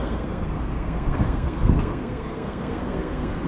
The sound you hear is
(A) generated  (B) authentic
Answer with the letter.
A